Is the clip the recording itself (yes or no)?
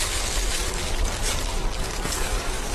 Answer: no